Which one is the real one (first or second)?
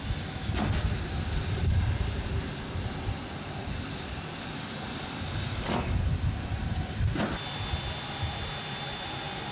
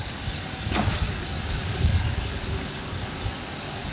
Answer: first